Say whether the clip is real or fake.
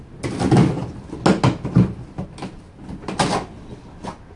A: real